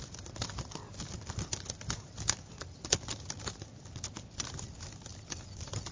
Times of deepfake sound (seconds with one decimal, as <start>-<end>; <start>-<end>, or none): 1.5-2.8